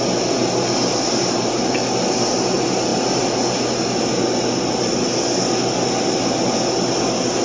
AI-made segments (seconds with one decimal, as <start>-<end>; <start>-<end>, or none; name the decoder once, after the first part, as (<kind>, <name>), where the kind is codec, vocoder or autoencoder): none